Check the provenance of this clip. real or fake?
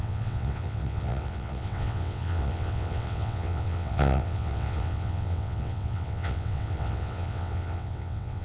fake